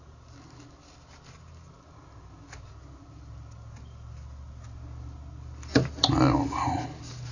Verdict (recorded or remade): recorded